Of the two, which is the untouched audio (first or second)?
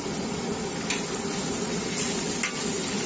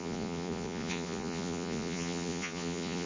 first